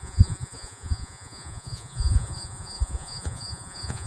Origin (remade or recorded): remade